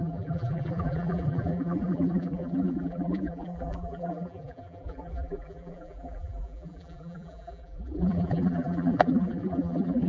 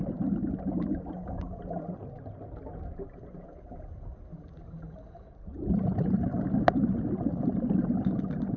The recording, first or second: second